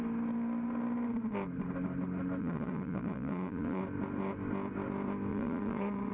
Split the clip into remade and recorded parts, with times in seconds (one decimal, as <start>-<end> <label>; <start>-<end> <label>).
0.0-2.4 recorded; 2.4-3.8 remade; 3.8-5.3 recorded; 5.3-6.1 remade